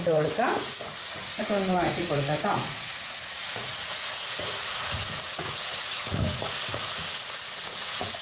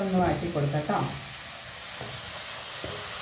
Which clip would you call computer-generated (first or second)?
first